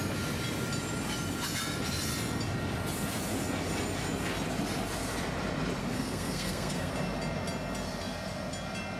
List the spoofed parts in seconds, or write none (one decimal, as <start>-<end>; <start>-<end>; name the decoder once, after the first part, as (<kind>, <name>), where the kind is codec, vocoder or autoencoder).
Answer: 5.8-6.9 (codec, SNAC)

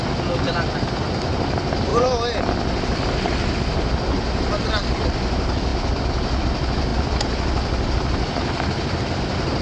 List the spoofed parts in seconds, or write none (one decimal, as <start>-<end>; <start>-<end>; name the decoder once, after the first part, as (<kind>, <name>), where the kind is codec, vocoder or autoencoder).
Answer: none

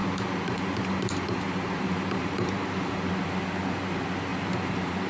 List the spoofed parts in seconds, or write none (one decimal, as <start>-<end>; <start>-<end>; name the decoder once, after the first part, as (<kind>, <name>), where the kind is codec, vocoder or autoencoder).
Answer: 0.0-3.1 (vocoder, BigVGAN v2); 4.3-5.1

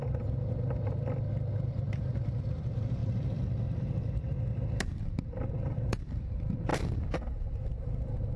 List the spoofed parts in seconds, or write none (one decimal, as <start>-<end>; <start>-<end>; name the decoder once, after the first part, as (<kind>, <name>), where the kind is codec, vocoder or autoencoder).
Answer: 0.0-8.4 (vocoder, BigVGAN v2)

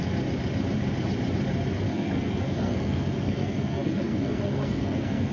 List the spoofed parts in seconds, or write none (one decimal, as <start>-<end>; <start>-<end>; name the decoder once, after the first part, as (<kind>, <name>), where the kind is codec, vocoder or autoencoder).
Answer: 1.9-5.3 (codec, SNAC)

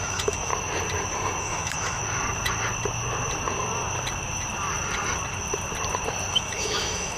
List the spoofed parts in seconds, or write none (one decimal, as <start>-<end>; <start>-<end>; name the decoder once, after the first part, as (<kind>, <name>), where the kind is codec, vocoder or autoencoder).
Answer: 0.0-0.5 (autoencoder, DAC-VAE); 1.4-2.0; 6.3-7.2

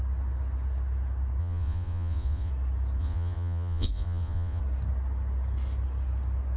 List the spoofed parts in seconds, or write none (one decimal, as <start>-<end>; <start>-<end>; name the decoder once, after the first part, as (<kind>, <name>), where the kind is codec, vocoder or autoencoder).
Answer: 1.4-2.5 (vocoder, Vocos); 3.0-4.6

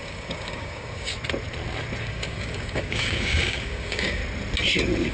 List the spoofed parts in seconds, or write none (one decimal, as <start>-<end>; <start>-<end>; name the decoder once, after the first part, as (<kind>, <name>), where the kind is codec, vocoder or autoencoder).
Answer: 0.0-1.1 (codec, DAC); 2.0-4.2